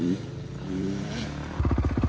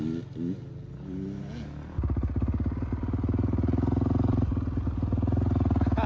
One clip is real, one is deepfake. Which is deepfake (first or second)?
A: first